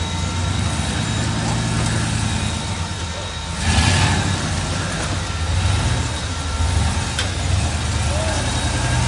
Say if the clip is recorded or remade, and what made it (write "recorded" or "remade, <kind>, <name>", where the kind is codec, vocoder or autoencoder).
recorded